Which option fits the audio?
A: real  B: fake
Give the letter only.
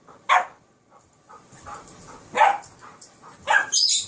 A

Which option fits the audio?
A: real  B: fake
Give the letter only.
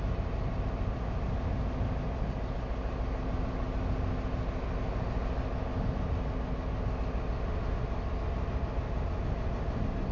A